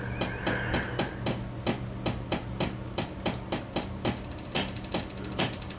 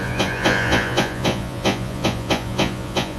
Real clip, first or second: first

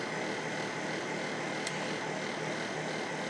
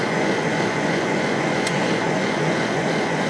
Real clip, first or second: first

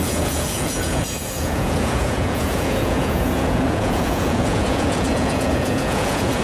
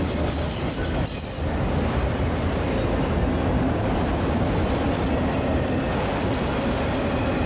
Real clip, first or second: second